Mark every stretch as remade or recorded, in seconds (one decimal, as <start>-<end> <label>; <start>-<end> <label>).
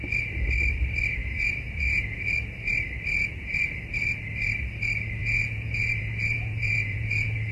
0.0-1.2 recorded; 1.2-2.2 remade; 2.2-5.2 recorded; 5.2-7.5 remade